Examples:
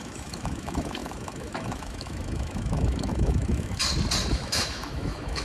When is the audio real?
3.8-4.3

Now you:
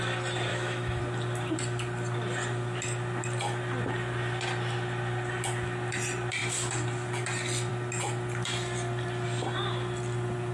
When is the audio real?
0.0-0.5; 1.0-10.5

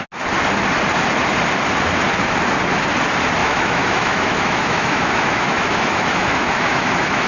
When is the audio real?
0.0-3.4

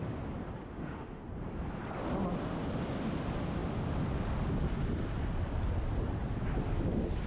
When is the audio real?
0.0-0.7; 1.2-7.3